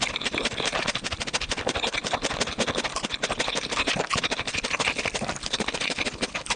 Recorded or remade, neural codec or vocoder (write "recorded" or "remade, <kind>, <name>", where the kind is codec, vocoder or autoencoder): recorded